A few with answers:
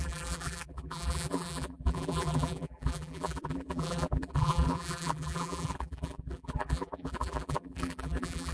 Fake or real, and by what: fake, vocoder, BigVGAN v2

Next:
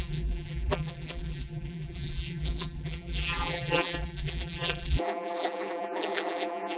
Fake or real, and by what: fake, vocoder, BigVGAN v2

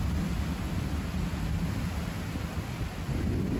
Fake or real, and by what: real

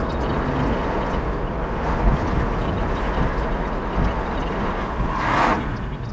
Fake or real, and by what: real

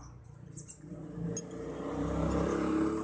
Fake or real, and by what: real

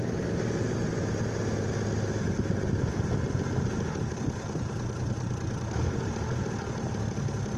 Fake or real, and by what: real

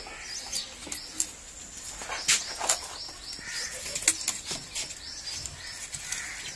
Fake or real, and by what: real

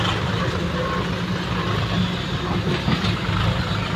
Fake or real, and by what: real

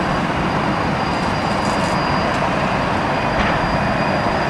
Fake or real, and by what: real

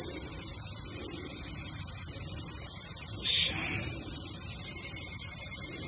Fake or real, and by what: fake, vocoder, BigVGAN v2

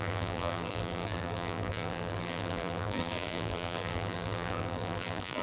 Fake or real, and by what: fake, vocoder, BigVGAN v2